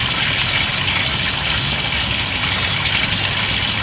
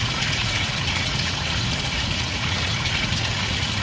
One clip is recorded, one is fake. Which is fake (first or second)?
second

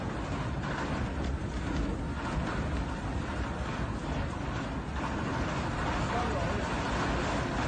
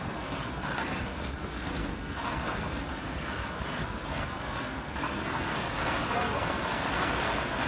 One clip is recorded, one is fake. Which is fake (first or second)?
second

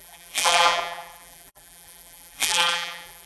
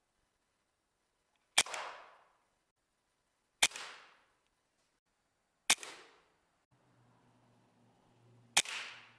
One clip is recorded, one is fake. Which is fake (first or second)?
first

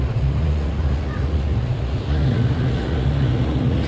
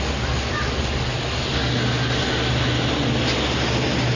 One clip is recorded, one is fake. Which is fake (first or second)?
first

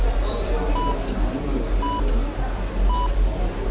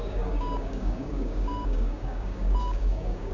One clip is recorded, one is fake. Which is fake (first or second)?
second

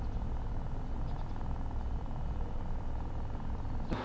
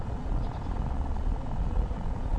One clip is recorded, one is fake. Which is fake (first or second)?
second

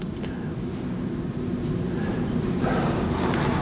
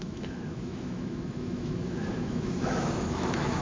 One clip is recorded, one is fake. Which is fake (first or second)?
second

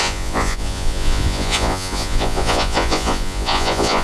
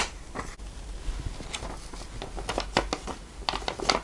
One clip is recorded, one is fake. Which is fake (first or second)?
first